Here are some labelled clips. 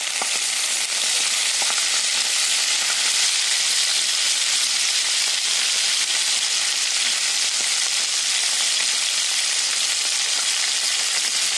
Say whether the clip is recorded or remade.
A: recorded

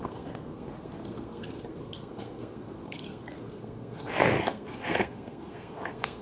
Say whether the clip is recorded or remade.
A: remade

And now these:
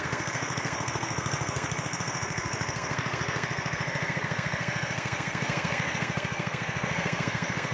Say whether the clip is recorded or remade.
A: remade